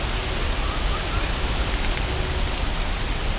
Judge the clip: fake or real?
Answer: real